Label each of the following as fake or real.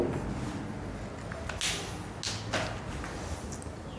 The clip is real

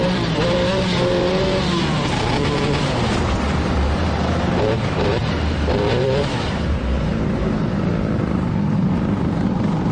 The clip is fake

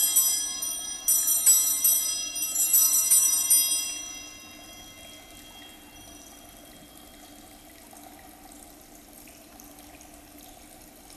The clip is real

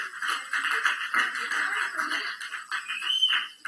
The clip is real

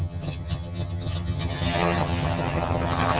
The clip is fake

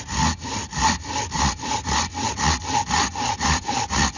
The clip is real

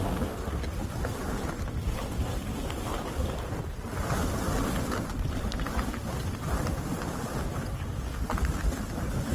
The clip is real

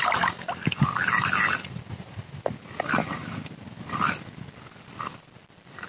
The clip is real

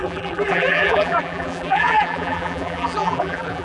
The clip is fake